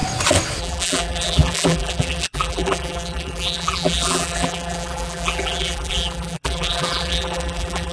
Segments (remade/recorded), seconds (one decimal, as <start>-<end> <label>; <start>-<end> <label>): 0.0-0.6 recorded; 0.6-7.9 remade